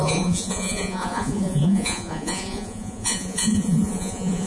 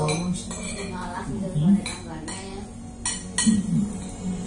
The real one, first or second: second